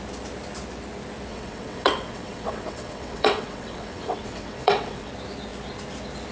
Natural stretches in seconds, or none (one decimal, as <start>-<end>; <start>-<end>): 0.0-1.3; 5.1-6.3